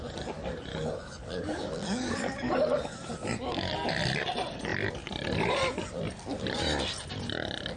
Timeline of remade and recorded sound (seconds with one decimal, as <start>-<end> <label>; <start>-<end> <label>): 0.0-0.7 recorded; 0.7-3.7 remade; 3.7-7.8 recorded

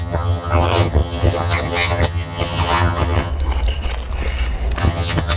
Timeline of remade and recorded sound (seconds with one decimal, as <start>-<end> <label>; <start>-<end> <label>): 0.0-3.3 remade; 3.3-4.8 recorded; 4.8-5.4 remade

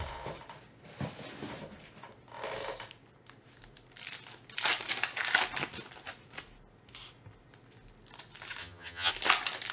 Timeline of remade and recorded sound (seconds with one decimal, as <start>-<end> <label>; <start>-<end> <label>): 0.0-8.6 recorded; 8.6-9.1 remade; 9.1-9.7 recorded

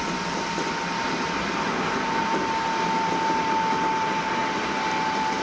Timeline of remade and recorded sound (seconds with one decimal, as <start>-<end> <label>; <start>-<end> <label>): 0.0-5.4 recorded